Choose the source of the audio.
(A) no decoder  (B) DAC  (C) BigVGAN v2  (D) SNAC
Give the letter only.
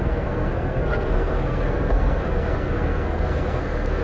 D